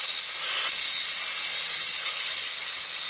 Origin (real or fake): real